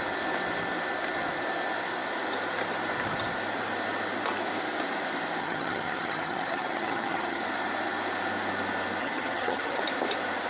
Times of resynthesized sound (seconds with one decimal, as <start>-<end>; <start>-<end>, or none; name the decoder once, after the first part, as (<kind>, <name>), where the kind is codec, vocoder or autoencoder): 5.4-7.4 (vocoder, HiFi-GAN); 9.0-9.8